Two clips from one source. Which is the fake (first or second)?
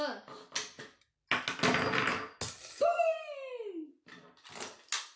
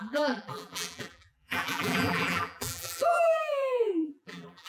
second